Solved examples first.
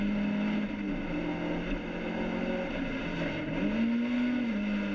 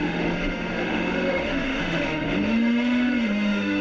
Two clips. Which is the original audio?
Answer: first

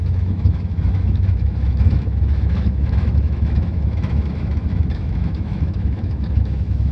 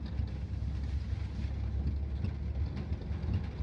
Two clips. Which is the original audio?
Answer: second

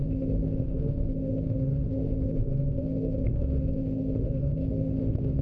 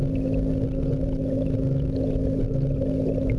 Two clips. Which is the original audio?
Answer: second